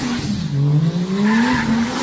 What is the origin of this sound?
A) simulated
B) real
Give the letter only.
B